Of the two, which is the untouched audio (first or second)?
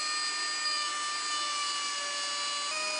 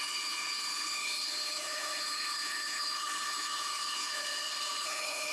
first